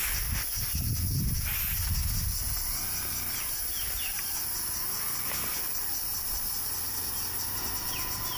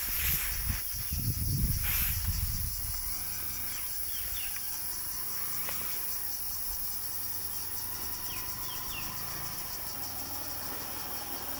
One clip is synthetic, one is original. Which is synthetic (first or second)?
second